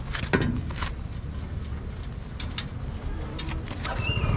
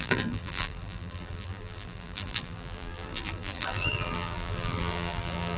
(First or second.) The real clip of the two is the first